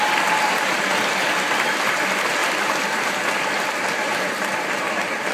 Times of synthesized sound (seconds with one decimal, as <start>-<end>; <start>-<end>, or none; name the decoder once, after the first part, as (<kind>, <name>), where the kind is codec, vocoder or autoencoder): none